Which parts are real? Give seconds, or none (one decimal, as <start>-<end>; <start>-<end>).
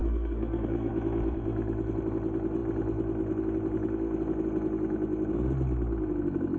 0.9-6.6